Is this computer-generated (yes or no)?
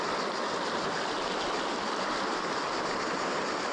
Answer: no